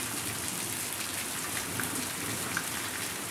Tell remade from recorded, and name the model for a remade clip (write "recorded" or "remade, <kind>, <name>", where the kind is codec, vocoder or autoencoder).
recorded